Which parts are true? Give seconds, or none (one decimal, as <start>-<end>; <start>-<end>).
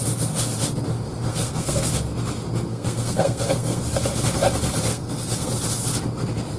0.0-1.3; 1.9-2.7; 3.8-4.9; 5.5-6.6